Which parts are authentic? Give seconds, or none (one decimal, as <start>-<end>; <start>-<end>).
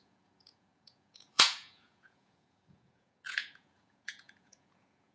none